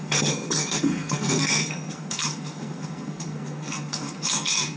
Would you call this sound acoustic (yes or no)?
no